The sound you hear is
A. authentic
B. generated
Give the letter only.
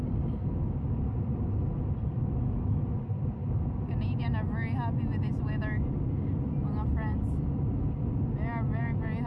A